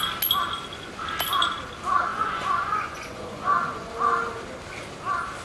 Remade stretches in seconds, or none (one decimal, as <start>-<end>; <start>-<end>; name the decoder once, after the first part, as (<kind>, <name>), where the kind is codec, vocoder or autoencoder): 2.1-3.9 (vocoder, Vocos)

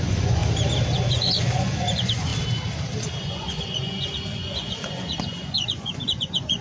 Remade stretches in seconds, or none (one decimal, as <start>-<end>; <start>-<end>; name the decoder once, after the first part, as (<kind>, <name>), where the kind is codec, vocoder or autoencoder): 0.0-0.4 (vocoder, Vocos); 1.1-2.3; 3.2-6.6